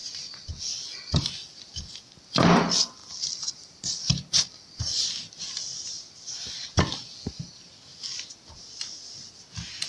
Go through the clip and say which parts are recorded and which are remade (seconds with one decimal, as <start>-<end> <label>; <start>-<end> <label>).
0.0-1.3 remade; 1.3-3.0 recorded; 3.0-7.6 remade; 7.6-9.9 recorded